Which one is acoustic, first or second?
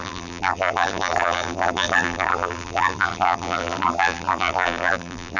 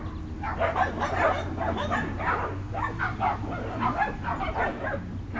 second